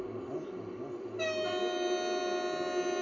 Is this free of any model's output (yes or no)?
yes